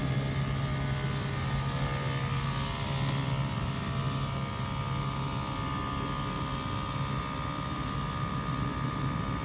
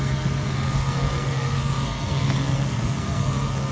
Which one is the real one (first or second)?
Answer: first